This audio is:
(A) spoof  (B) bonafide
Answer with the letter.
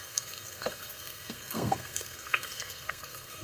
A